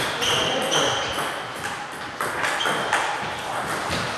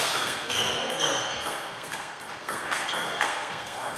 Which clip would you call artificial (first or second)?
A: second